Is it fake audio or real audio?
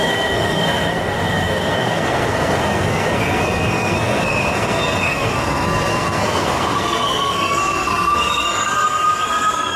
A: fake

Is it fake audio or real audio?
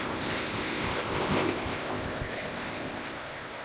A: fake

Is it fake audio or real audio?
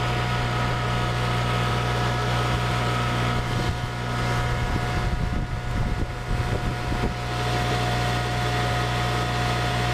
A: real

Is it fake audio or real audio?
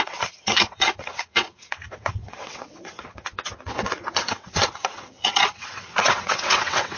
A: fake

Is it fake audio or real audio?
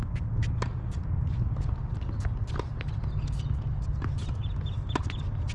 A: real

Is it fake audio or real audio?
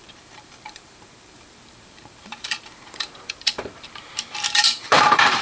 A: fake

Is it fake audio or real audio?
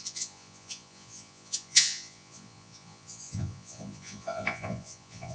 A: fake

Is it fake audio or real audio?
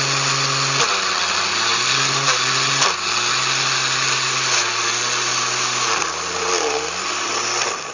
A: real